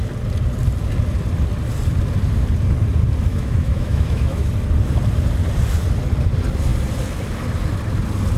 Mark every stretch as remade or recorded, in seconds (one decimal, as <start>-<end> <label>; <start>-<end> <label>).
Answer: 0.0-3.3 recorded; 3.3-4.5 remade; 4.5-8.4 recorded